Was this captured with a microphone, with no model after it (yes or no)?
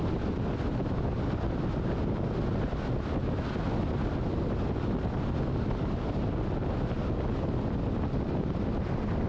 yes